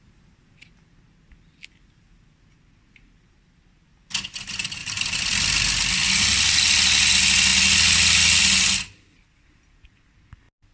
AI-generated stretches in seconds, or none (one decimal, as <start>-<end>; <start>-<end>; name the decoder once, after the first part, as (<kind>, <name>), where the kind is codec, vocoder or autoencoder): none